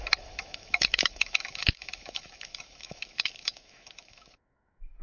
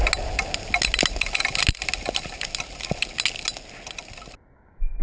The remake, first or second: first